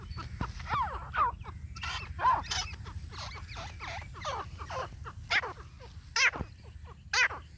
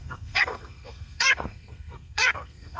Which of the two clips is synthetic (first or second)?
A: second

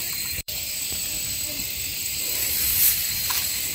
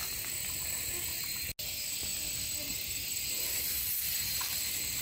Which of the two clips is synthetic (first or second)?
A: first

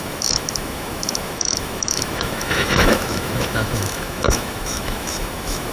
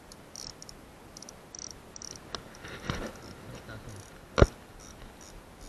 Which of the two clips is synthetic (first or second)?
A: first